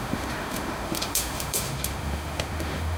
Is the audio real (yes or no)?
no